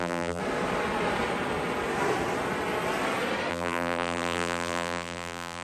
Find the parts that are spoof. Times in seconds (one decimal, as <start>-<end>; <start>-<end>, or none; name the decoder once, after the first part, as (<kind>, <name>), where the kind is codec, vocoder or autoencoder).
0.0-0.4 (vocoder, BigVGAN v2); 3.5-5.6